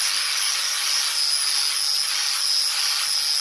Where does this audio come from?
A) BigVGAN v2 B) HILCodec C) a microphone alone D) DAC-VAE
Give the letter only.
C